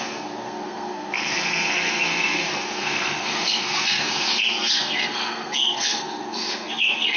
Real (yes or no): no